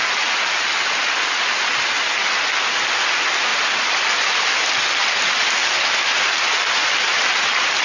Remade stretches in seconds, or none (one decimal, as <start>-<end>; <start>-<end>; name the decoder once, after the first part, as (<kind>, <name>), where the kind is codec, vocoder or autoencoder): none